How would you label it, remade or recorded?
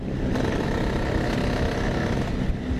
recorded